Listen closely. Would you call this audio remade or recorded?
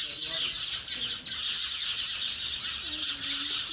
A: recorded